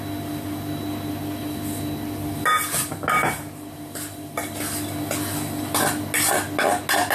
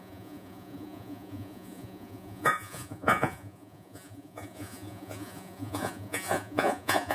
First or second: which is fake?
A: second